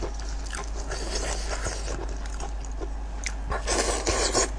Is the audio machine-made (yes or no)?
no